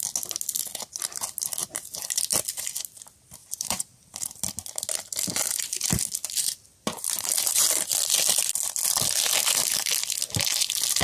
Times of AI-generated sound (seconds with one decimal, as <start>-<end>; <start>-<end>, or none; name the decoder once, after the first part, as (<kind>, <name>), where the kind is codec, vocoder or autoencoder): 1.6-2.2 (vocoder, BigVGAN v2); 3.4-4.4